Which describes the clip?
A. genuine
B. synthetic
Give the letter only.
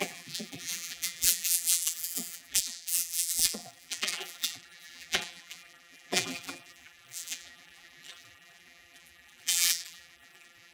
B